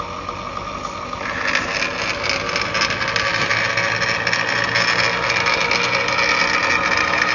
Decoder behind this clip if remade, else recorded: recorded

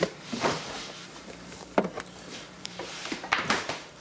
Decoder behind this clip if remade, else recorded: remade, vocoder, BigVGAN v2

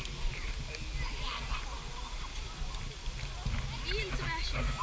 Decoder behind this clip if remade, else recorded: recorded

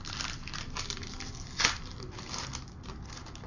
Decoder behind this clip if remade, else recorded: recorded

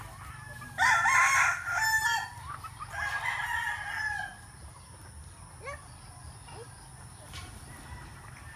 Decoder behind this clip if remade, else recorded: recorded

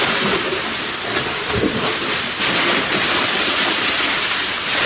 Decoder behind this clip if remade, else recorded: remade, vocoder, BigVGAN v2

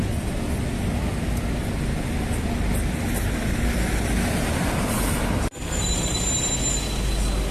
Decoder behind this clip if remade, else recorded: recorded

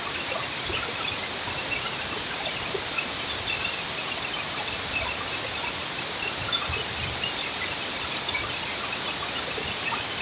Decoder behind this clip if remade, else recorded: remade, vocoder, BigVGAN v2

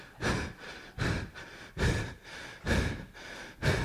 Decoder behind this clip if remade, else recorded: recorded